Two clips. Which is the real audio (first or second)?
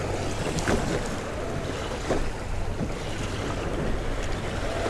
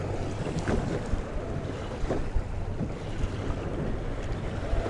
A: first